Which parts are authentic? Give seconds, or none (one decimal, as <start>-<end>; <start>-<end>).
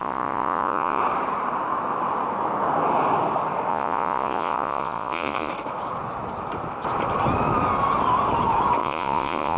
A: 1.0-3.7; 5.5-8.8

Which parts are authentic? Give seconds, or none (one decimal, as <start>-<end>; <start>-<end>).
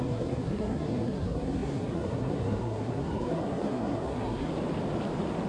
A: 4.5-5.5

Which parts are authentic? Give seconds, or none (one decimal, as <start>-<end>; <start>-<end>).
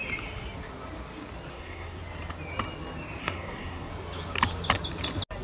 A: 0.0-1.5; 2.0-3.2; 3.9-5.4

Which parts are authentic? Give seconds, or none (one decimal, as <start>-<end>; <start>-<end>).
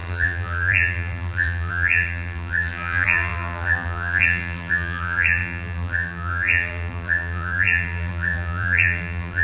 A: none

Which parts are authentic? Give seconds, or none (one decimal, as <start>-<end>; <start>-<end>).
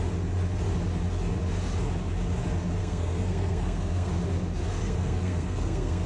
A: 0.0-2.8; 4.1-4.8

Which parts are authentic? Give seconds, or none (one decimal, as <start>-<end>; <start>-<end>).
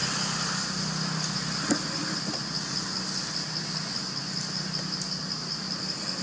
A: 0.0-6.2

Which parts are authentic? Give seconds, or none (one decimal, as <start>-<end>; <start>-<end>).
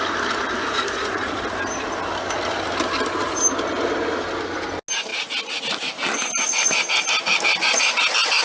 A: 0.0-0.6; 1.4-8.4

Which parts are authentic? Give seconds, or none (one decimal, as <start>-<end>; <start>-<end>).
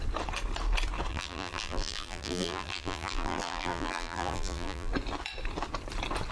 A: 0.0-1.1; 4.9-6.3